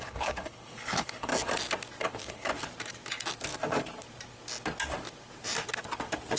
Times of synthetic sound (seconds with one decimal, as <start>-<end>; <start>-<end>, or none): 0.0-1.3; 2.0-2.5